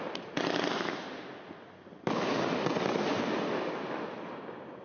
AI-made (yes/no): no